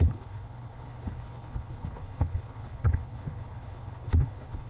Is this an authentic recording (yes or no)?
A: no